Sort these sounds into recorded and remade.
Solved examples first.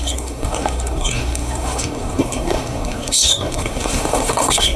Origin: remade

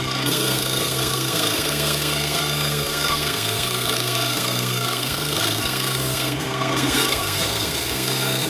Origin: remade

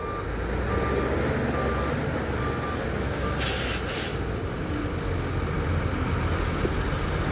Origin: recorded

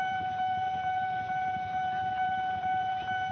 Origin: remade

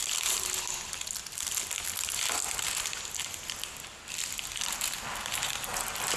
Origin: recorded